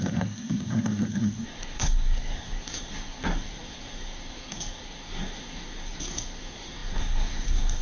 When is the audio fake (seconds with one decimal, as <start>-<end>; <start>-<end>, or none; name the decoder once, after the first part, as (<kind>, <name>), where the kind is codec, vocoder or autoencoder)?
0.0-7.8 (codec, SNAC)